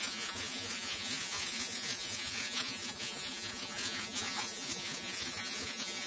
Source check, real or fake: fake